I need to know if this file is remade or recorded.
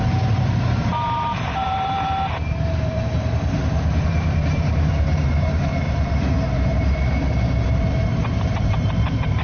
remade